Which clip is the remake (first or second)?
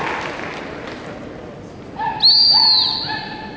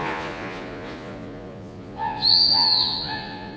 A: second